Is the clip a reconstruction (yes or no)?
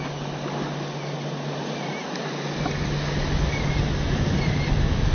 no